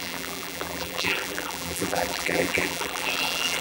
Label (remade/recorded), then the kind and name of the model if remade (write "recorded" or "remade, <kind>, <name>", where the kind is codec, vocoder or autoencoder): remade, vocoder, BigVGAN v2